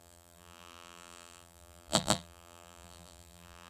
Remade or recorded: remade